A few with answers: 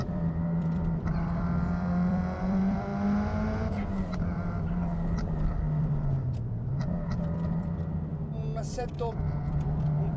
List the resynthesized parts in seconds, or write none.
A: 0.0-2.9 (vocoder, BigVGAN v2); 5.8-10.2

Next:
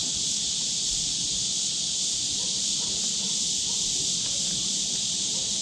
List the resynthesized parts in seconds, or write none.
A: none

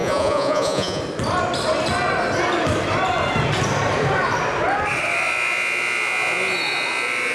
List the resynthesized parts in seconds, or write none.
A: 0.0-1.0 (vocoder, Vocos)